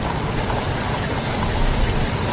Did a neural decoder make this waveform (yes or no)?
no